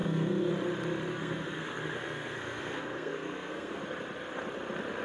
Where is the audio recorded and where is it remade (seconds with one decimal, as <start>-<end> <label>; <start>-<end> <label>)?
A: 0.0-0.5 remade; 0.5-1.1 recorded; 1.1-3.8 remade; 3.8-5.0 recorded